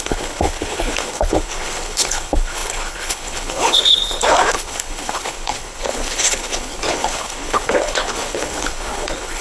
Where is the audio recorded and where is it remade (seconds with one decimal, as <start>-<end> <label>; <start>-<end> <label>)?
0.0-9.4 remade